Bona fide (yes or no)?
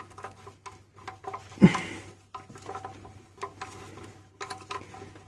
yes